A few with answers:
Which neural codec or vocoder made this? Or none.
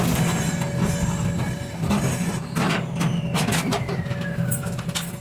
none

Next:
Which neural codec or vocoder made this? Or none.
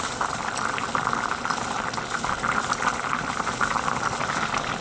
none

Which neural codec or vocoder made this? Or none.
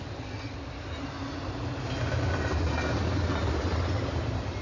none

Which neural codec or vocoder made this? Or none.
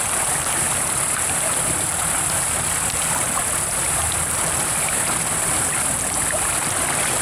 vocoder, BigVGAN v2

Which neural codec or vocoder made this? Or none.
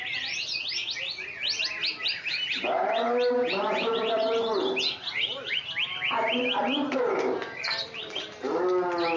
none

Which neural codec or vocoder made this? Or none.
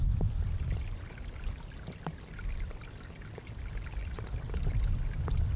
none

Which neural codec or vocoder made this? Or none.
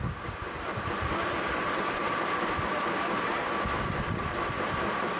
none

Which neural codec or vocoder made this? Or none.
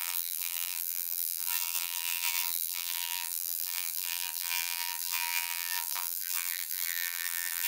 vocoder, BigVGAN v2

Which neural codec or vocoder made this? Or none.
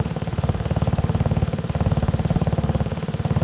autoencoder, DAC-VAE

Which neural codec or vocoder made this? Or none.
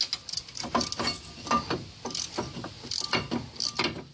none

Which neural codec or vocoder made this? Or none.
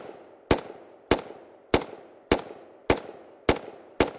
none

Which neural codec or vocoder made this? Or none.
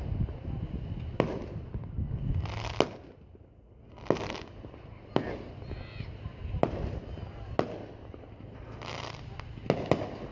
none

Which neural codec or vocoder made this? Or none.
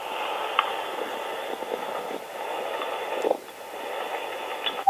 vocoder, BigVGAN v2